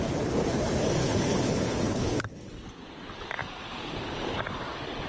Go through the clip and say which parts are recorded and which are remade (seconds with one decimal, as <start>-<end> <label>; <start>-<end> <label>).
0.0-1.0 recorded; 1.0-2.5 remade; 2.5-5.1 recorded